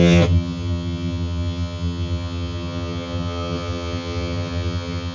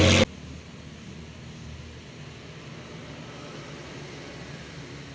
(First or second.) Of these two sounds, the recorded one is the second